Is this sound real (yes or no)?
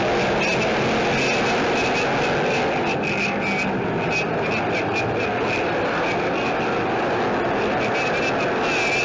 yes